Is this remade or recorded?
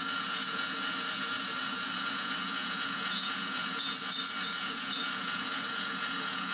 remade